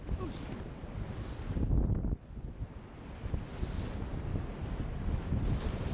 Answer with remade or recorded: recorded